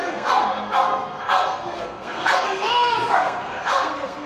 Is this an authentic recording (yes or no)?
no